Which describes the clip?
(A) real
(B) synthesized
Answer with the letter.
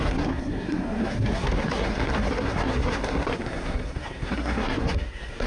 B